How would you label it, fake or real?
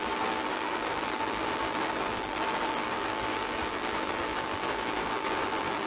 fake